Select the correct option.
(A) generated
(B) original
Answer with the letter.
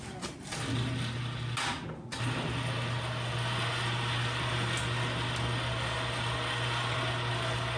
B